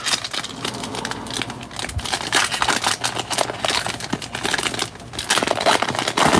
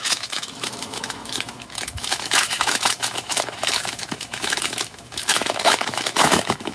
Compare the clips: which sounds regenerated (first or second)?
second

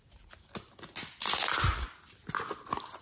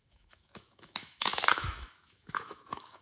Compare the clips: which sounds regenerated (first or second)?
second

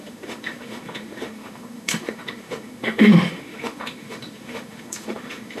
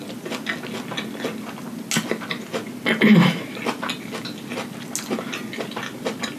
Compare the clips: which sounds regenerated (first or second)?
first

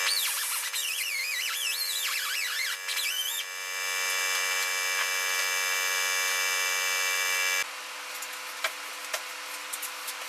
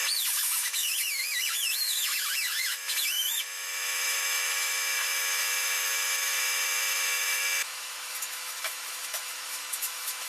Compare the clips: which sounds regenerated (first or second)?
second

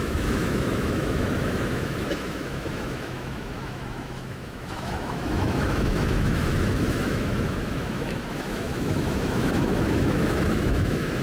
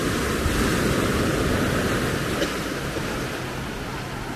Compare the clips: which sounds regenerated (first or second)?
first